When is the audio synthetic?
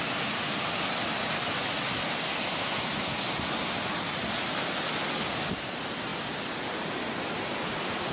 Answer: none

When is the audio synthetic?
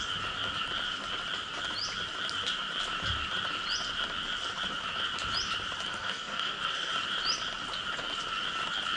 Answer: 5.9-6.9 (codec, SNAC)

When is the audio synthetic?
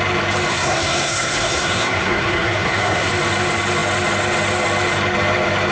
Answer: 0.5-3.1 (codec, SNAC)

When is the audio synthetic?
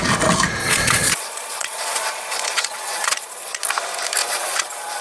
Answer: 0.6-3.6 (vocoder, Vocos); 4.2-5.0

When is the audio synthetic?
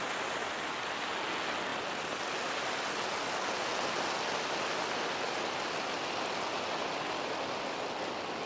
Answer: none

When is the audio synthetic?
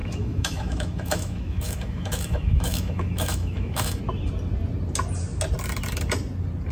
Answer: 0.0-4.0 (autoencoder, DAC-VAE)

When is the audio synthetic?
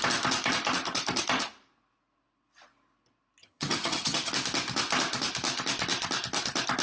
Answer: 3.4-4.3 (vocoder, HiFi-GAN)